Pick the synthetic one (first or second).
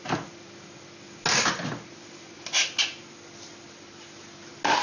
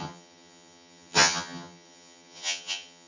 second